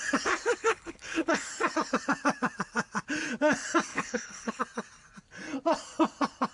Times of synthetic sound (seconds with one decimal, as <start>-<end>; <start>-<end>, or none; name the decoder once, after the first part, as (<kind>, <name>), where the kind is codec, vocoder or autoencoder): 0.6-1.5 (codec, HILCodec); 3.9-4.6